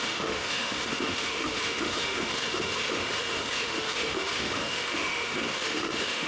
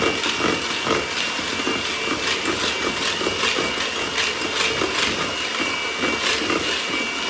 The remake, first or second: first